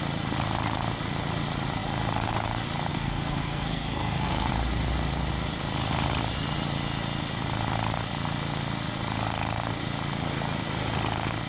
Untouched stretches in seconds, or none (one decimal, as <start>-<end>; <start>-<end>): 0.0-2.9; 4.5-11.5